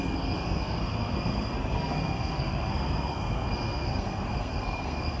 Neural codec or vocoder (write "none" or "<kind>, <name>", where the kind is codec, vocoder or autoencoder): codec, SNAC